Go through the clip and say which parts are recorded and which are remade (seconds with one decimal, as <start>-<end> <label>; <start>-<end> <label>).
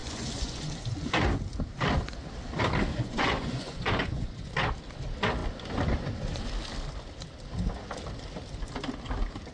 0.0-0.7 remade; 0.7-2.9 recorded; 2.9-4.5 remade; 4.5-9.5 recorded